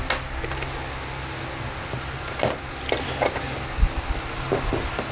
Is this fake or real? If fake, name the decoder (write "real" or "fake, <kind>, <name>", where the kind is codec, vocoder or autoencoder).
real